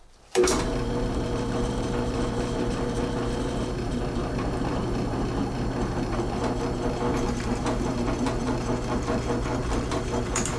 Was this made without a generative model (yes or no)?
no